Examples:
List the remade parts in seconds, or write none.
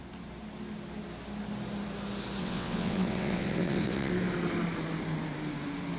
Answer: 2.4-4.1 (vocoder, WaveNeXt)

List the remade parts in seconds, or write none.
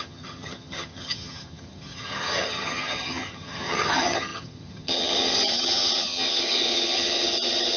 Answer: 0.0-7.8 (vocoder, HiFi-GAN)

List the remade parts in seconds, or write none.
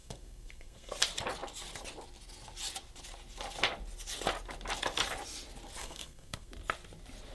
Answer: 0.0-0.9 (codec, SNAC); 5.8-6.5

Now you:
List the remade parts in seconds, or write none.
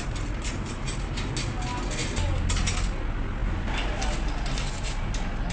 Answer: none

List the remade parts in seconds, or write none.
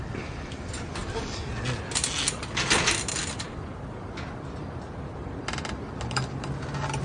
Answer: none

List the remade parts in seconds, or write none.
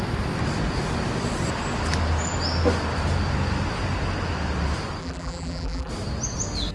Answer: 5.0-5.9 (vocoder, BigVGAN v2)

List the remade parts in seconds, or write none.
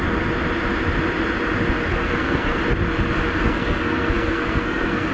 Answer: 1.9-2.6 (codec, SNAC); 3.4-5.1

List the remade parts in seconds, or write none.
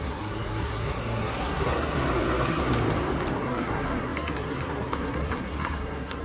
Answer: 0.0-2.6 (codec, SNAC); 3.3-6.2